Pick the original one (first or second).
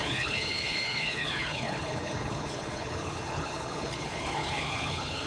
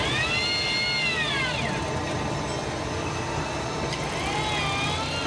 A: second